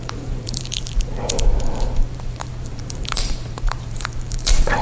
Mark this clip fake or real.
fake